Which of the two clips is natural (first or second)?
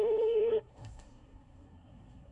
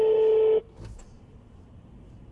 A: second